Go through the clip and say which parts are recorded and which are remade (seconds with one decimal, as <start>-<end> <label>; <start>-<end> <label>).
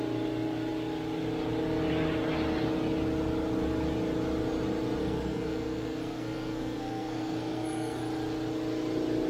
0.0-5.0 recorded; 5.0-8.0 remade; 8.0-9.3 recorded